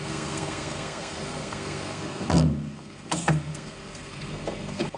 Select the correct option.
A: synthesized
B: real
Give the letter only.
A